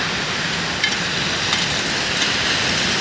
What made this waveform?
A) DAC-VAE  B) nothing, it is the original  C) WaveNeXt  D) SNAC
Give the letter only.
B